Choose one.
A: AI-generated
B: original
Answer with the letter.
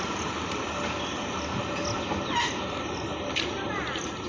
B